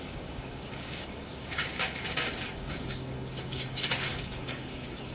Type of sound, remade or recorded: remade